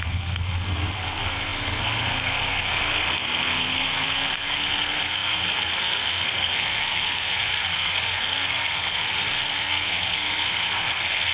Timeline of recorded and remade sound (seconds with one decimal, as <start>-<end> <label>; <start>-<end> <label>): 0.0-11.3 remade